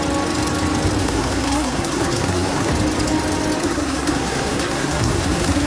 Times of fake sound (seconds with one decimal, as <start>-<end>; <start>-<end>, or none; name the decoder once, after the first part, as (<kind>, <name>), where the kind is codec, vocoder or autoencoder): 1.0-2.7 (codec, SNAC); 3.6-5.7